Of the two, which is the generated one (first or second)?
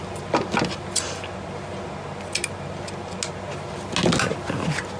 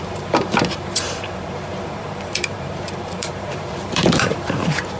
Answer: second